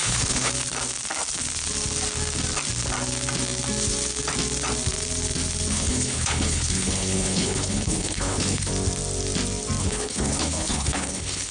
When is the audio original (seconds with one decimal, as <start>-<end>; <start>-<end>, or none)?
0.5-5.7; 8.7-9.8